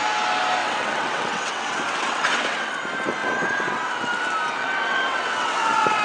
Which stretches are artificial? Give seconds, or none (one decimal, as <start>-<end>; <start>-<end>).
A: 0.6-2.7; 3.2-3.9; 4.6-6.0